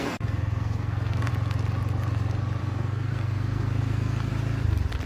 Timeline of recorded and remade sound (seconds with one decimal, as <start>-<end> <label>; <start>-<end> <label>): 0.0-1.3 remade; 1.3-2.6 recorded; 2.6-4.3 remade; 4.3-5.1 recorded